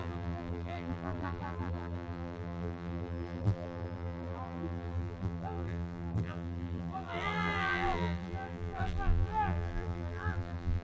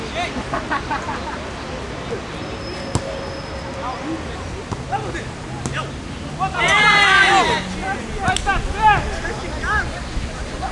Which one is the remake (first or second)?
first